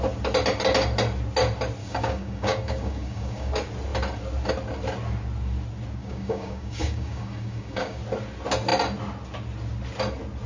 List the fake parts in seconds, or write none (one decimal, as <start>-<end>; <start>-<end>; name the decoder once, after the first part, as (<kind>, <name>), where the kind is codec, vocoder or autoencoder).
1.8-3.5 (codec, DAC); 6.0-8.0